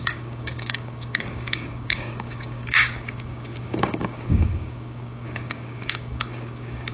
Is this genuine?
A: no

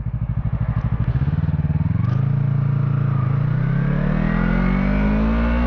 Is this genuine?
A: yes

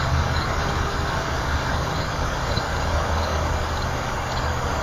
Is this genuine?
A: no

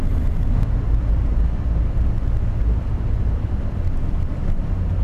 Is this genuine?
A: yes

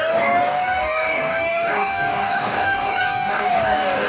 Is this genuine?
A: no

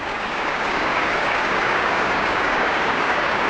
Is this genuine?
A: no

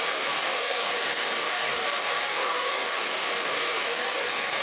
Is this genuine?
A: no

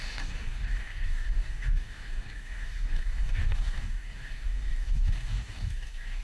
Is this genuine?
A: no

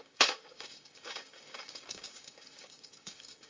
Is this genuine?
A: no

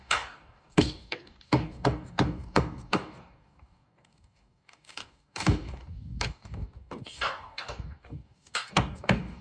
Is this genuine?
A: no